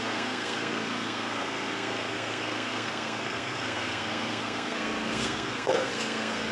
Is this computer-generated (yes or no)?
yes